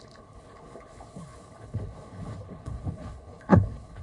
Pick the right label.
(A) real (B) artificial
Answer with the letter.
B